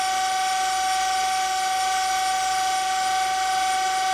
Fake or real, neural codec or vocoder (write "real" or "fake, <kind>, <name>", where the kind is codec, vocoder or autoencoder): real